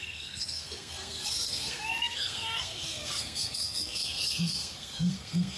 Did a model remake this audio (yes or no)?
yes